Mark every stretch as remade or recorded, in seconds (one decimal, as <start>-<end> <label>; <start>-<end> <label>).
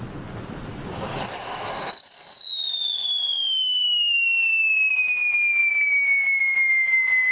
0.0-7.3 recorded